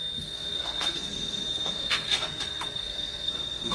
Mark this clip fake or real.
fake